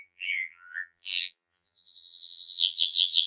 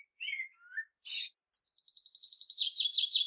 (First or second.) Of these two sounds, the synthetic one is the first